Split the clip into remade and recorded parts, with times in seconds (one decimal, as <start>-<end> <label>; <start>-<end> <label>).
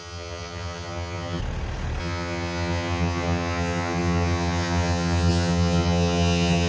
0.0-1.4 remade; 1.4-2.0 recorded; 2.0-6.7 remade